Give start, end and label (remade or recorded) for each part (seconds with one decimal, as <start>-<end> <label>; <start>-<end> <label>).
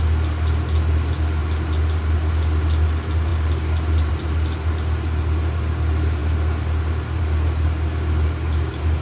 0.0-9.0 recorded